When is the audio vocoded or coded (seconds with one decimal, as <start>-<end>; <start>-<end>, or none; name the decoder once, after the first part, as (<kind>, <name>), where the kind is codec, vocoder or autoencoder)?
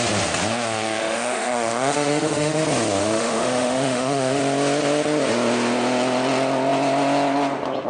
1.0-2.6 (autoencoder, DAC-VAE); 3.0-4.4